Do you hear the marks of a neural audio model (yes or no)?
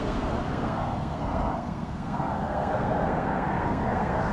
yes